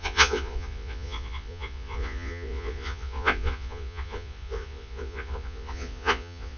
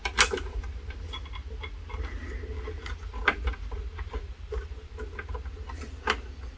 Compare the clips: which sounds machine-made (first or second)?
first